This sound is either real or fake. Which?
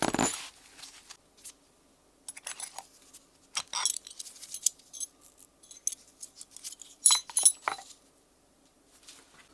real